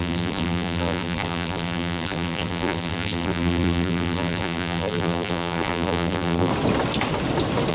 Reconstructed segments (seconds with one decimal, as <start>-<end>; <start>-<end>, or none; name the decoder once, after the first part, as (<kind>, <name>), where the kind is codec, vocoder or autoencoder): 0.0-6.5 (vocoder, BigVGAN v2)